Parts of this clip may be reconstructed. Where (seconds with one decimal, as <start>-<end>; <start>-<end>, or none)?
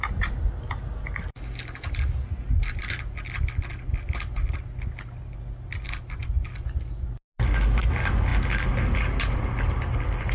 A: none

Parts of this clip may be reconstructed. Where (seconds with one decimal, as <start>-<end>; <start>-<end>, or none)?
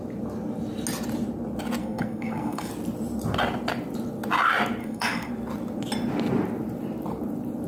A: 1.8-2.7; 4.8-5.3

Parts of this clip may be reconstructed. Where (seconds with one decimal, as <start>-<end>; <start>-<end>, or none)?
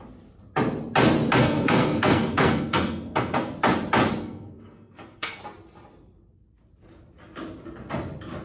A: 1.4-3.5; 4.2-5.4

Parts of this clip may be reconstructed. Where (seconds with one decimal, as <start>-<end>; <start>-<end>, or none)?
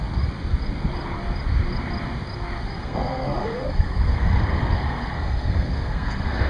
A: 2.8-6.5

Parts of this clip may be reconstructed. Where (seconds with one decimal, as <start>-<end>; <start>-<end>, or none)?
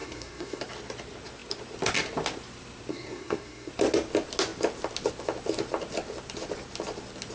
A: 0.0-0.6; 2.9-3.7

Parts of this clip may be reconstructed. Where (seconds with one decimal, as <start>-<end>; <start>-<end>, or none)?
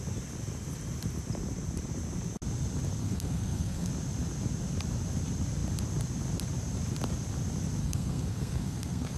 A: 3.0-3.9; 7.8-9.2